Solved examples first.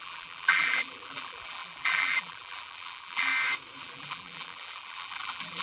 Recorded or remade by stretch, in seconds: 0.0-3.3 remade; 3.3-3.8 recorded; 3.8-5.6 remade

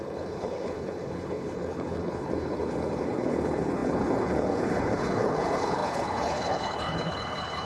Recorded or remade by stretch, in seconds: 0.0-7.7 remade